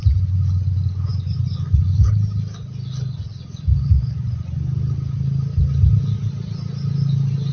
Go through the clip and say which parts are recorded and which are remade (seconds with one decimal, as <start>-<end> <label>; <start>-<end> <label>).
0.0-7.5 recorded